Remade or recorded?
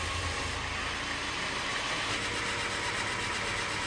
recorded